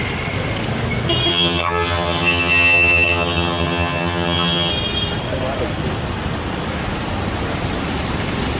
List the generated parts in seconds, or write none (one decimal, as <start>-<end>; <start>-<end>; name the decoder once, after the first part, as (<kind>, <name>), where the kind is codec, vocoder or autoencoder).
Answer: 1.3-4.7 (vocoder, HiFi-GAN)

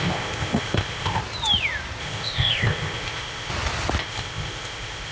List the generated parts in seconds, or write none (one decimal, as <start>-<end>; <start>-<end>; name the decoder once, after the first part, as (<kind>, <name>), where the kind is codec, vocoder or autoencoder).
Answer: 0.0-1.2 (codec, ZipCodec); 2.0-3.5; 4.0-5.1

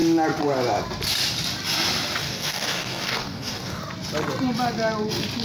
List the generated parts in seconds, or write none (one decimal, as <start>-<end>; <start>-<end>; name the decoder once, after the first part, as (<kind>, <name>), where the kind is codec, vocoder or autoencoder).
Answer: 2.2-3.8 (codec, DAC)

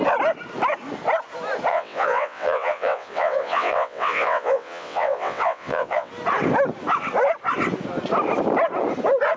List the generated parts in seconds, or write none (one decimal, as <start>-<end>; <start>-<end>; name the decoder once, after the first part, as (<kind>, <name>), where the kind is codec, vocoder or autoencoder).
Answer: 1.7-6.1 (vocoder, WaveNeXt)

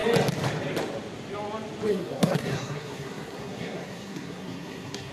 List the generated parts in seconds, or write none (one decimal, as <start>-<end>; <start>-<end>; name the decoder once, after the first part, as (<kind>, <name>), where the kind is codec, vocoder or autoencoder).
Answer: 1.9-5.1 (codec, SNAC)

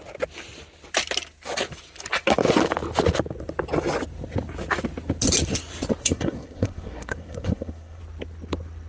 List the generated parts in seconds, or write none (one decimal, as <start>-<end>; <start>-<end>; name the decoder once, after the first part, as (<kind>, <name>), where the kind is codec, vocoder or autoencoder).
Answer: 6.0-8.0 (codec, SNAC)

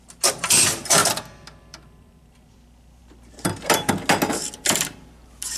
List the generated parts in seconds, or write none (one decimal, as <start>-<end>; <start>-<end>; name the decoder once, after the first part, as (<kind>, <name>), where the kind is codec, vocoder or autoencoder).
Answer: 1.0-2.5 (vocoder, BigVGAN v2)

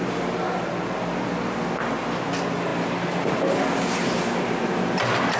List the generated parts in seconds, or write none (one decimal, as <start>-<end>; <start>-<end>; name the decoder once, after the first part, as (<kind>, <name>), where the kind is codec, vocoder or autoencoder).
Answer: none